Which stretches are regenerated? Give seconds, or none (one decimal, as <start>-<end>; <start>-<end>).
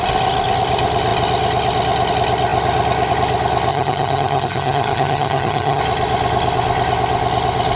3.7-5.8